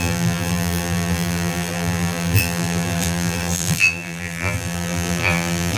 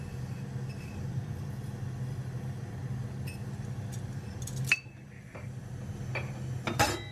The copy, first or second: first